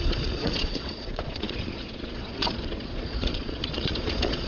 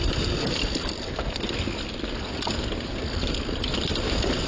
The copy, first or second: first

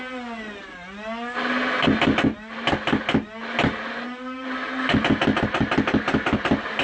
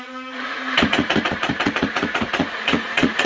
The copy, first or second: second